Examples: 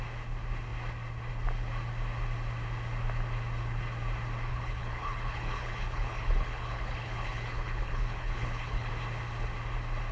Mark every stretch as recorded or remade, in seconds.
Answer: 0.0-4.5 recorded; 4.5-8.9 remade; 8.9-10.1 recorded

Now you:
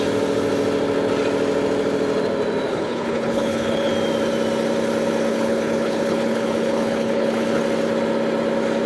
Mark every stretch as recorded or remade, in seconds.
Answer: 0.0-2.7 recorded; 2.7-3.9 remade; 3.9-5.3 recorded; 5.3-7.6 remade; 7.6-8.9 recorded